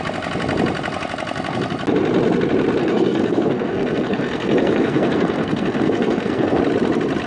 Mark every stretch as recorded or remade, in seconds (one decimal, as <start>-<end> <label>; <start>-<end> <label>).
0.0-2.8 recorded; 2.8-6.6 remade; 6.6-7.3 recorded